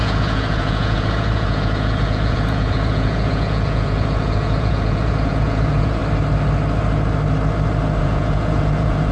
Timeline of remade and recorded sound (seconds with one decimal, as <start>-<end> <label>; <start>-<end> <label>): 0.0-6.0 remade; 6.0-8.0 recorded; 8.0-9.1 remade